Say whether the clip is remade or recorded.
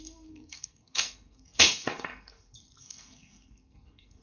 remade